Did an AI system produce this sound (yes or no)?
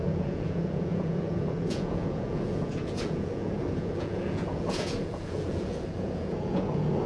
yes